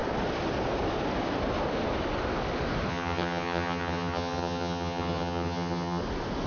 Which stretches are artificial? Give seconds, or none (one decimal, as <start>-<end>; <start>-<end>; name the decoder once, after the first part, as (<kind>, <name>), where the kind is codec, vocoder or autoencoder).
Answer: 2.9-6.0 (vocoder, HiFi-GAN)